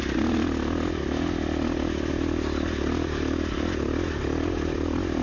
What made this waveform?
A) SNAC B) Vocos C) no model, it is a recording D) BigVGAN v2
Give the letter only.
C